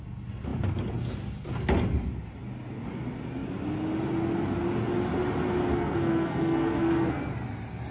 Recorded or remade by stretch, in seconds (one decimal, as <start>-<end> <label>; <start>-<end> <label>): 0.0-5.6 recorded; 5.6-7.3 remade; 7.3-7.9 recorded